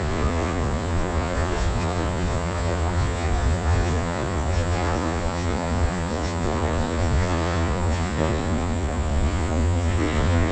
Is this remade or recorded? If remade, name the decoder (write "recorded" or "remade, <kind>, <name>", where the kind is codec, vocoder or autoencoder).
remade, vocoder, Vocos